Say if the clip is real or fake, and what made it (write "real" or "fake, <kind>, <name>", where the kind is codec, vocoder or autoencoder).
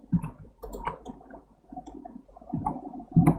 fake, vocoder, Vocos